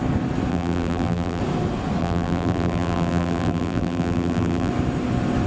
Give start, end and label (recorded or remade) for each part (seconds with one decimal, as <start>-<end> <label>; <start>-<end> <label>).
0.0-0.5 recorded; 0.5-1.4 remade; 1.4-2.0 recorded; 2.0-4.7 remade; 4.7-5.5 recorded